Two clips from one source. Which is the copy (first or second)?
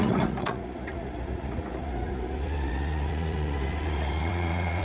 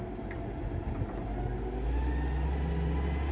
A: first